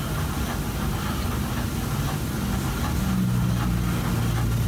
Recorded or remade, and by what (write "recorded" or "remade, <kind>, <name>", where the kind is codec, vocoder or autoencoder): recorded